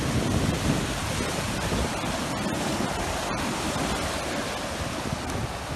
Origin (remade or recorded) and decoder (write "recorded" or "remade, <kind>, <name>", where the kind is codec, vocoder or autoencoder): recorded